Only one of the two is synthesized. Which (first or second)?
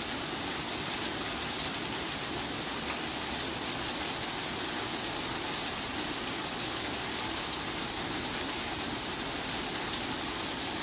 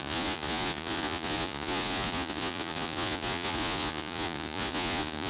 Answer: second